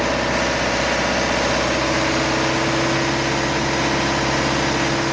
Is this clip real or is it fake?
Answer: real